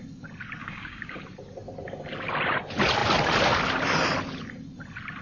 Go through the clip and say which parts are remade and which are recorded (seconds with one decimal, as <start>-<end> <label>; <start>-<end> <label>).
0.0-0.6 recorded; 0.6-1.2 remade; 1.2-5.2 recorded